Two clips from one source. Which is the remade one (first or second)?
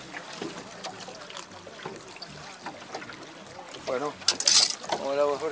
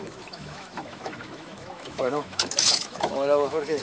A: second